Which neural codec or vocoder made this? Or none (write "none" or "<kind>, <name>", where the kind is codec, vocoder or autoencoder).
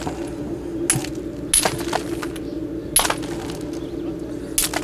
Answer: none